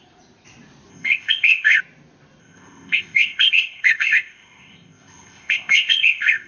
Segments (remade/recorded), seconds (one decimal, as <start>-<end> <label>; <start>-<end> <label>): 0.0-0.9 recorded; 0.9-1.8 remade; 1.8-2.4 recorded; 2.4-6.5 remade